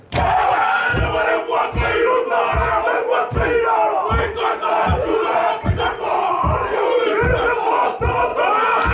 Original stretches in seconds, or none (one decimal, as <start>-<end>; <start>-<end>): 0.9-4.2; 8.3-8.9